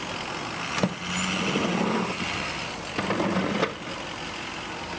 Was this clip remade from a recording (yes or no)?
no